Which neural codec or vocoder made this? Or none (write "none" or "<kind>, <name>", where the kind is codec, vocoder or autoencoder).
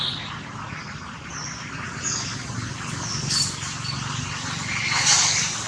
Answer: none